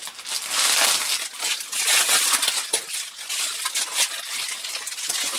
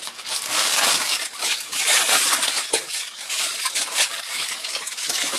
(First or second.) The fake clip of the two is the second